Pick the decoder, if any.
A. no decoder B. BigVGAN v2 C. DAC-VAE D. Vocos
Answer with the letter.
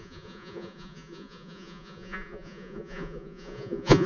D